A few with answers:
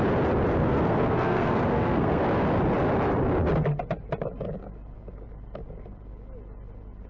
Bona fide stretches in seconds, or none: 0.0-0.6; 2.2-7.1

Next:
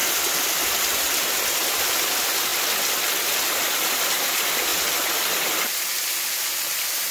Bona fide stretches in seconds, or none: 0.0-7.1

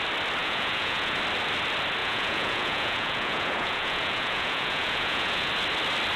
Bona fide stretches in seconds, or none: 0.0-0.4; 1.2-2.0; 5.5-6.2

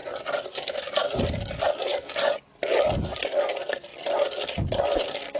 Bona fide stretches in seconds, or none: 0.0-5.4

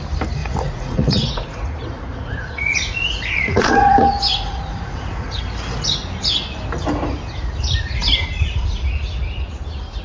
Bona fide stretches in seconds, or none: 0.0-0.4; 5.4-10.0

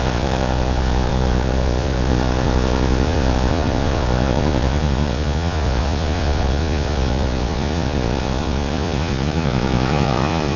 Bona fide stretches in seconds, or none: none

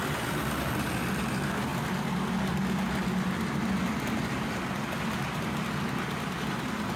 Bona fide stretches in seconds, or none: 0.0-7.0

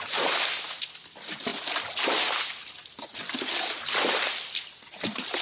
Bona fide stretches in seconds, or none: 0.0-5.4